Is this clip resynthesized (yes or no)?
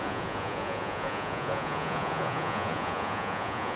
yes